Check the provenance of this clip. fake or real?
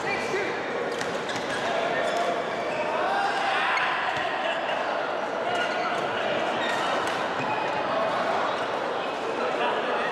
real